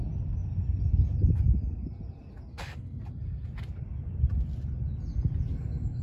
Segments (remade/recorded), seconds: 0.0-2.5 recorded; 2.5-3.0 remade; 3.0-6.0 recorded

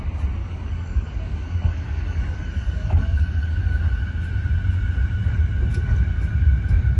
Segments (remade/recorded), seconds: 0.0-0.4 recorded; 0.4-3.8 remade; 3.8-7.0 recorded

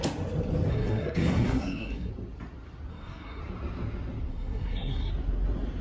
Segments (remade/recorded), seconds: 0.0-0.7 recorded; 0.7-2.1 remade; 2.1-2.9 recorded; 2.9-3.4 remade; 3.4-4.3 recorded; 4.3-5.1 remade; 5.1-5.8 recorded